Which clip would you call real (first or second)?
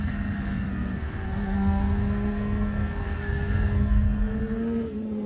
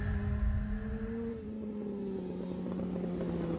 second